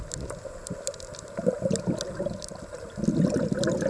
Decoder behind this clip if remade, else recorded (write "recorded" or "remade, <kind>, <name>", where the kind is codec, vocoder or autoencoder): recorded